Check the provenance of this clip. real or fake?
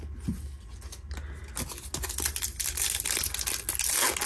real